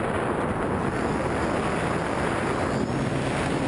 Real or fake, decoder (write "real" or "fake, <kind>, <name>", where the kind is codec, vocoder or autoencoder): real